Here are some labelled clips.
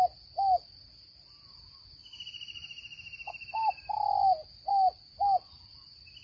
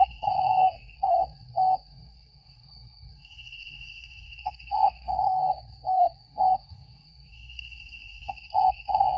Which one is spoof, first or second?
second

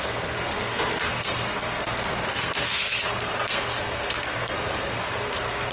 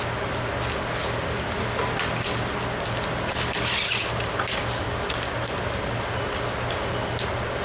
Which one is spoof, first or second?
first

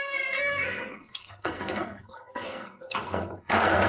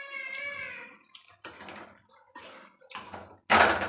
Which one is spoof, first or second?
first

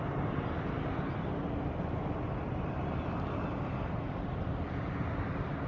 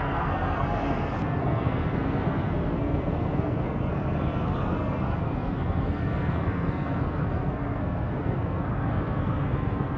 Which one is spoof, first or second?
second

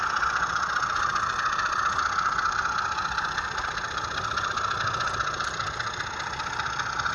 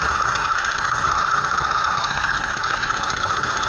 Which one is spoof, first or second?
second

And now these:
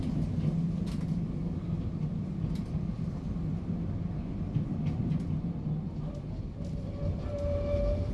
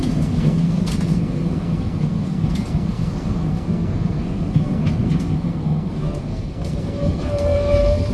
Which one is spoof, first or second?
second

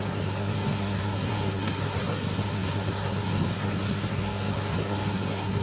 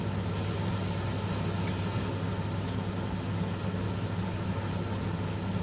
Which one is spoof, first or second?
first